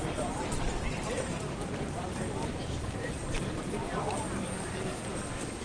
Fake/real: fake